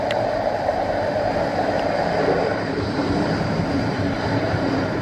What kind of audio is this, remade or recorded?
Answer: remade